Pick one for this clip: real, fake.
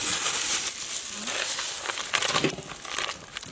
real